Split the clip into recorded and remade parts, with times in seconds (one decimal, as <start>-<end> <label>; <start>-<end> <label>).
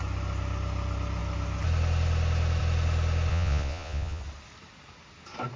0.0-3.3 recorded; 3.3-4.2 remade; 4.2-5.6 recorded